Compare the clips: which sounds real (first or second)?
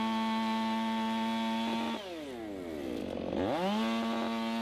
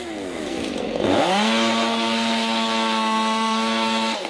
first